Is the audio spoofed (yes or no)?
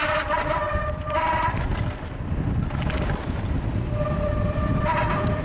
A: no